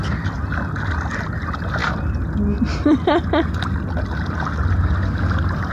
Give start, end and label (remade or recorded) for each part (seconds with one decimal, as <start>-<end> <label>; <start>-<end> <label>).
0.0-5.7 recorded